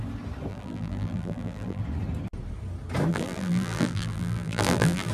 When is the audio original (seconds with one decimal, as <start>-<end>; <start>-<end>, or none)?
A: 0.0-0.5; 1.8-3.1